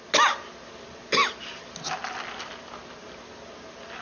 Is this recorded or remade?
recorded